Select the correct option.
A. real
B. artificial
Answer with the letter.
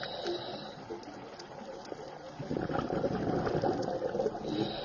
A